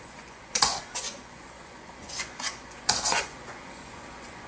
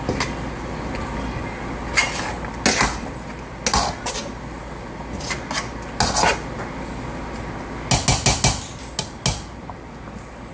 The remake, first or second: first